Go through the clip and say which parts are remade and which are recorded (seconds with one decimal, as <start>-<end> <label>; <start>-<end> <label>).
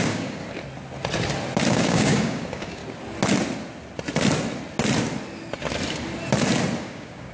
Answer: 0.0-0.4 remade; 0.4-1.7 recorded; 1.7-2.8 remade; 2.8-6.8 recorded; 6.8-7.3 remade